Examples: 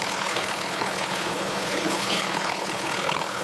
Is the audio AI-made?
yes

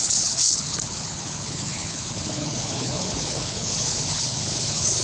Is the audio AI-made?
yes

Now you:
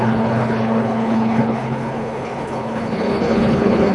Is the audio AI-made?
yes